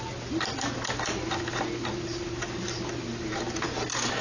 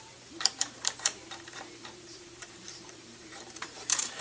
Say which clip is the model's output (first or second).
second